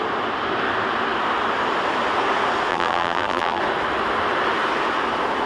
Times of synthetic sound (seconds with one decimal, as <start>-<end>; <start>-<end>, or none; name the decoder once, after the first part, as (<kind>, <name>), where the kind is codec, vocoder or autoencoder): 2.7-3.6 (vocoder, BigVGAN v2)